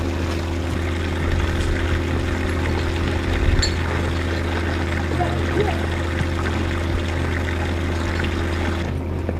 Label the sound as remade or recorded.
recorded